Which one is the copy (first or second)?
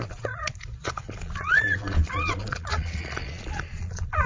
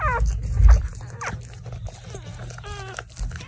first